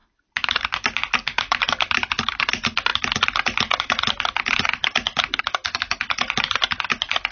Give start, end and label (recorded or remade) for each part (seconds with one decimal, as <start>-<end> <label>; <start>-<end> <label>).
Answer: 0.0-7.3 recorded